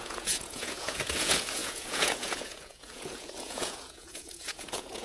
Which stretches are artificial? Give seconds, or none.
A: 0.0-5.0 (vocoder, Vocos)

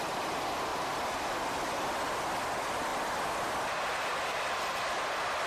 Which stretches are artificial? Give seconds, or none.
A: 0.0-0.7 (vocoder, BigVGAN v2); 2.5-5.5

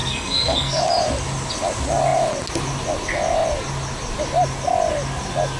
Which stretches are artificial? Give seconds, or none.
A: 0.0-0.8 (codec, SNAC)

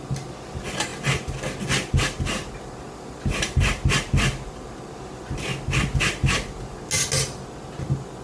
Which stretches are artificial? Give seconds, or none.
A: none